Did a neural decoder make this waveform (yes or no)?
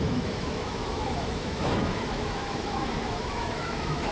yes